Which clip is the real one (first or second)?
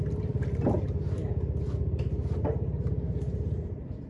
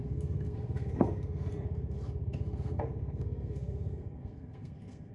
first